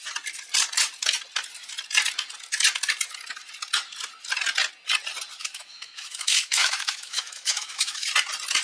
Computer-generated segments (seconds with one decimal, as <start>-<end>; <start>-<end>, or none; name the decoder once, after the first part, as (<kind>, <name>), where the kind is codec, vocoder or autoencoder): 5.4-8.1 (autoencoder, DAC-VAE)